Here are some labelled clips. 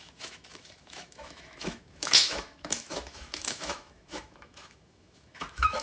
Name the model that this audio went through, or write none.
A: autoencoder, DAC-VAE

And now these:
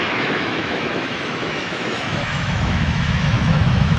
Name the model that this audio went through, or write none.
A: autoencoder, DAC-VAE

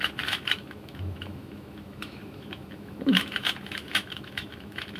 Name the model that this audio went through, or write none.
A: autoencoder, DAC-VAE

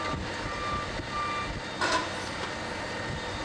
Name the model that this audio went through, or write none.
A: none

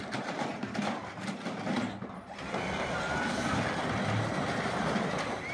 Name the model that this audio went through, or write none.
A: none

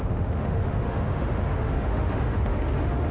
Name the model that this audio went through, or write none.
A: autoencoder, DAC-VAE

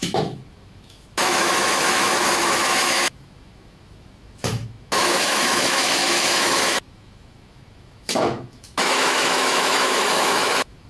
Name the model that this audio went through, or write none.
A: autoencoder, DAC-VAE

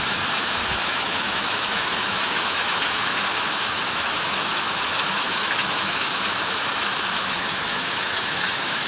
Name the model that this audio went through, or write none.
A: autoencoder, DAC-VAE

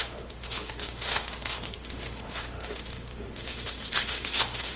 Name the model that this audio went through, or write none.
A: autoencoder, DAC-VAE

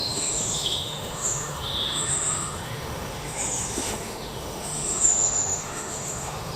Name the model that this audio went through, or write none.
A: autoencoder, DAC-VAE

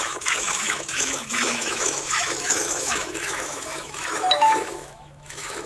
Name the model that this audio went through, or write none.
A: autoencoder, DAC-VAE